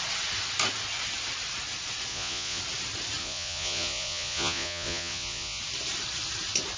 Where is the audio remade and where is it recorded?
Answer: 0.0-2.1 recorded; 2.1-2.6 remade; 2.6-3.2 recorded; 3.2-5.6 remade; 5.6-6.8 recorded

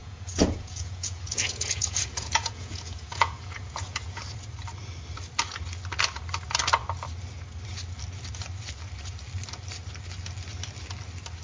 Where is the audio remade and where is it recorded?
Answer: 0.0-4.2 remade; 4.2-11.4 recorded